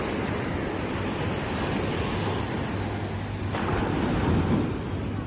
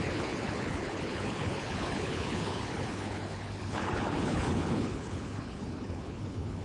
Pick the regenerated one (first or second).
second